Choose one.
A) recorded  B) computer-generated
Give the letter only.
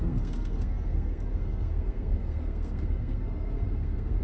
B